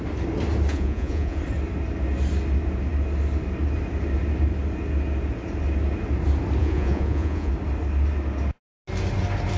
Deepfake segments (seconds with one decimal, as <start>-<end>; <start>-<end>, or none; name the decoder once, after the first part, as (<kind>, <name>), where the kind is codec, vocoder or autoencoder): 0.7-1.4 (vocoder, Vocos); 6.6-7.5